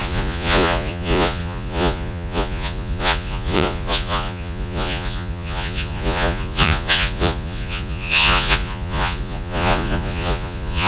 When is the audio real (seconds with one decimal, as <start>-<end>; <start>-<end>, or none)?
none